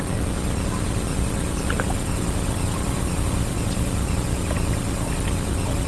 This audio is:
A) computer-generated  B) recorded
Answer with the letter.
B